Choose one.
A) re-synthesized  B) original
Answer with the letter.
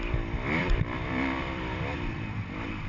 A